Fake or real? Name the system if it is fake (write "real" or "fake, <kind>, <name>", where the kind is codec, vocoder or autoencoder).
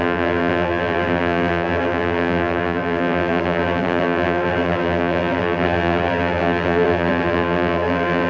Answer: fake, vocoder, BigVGAN v2